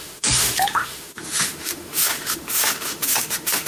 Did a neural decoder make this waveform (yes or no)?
yes